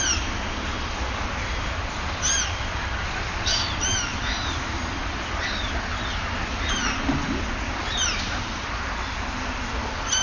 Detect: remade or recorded recorded